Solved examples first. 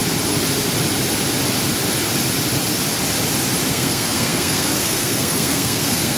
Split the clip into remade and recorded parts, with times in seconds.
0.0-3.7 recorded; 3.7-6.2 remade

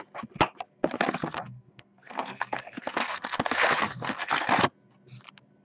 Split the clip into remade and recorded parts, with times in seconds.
0.0-1.2 recorded; 1.2-4.6 remade; 4.6-5.6 recorded